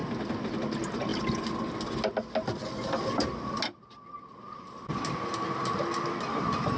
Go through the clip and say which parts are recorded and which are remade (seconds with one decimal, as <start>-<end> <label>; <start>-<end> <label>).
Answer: 0.0-6.8 recorded